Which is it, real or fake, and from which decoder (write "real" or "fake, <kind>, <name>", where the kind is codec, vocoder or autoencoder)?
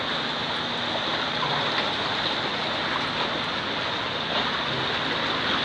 real